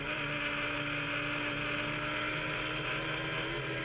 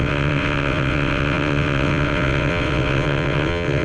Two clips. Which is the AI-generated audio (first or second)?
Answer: second